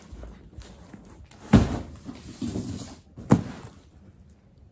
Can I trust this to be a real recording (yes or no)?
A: yes